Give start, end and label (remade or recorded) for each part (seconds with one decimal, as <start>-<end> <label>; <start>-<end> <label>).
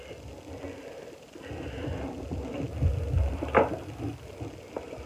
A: 0.0-5.1 recorded